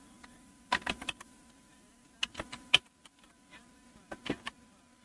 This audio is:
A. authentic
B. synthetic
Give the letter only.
A